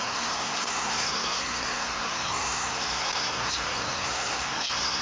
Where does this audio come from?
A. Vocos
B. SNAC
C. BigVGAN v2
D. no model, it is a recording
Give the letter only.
B